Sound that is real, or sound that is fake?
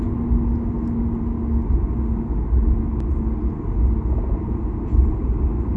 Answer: real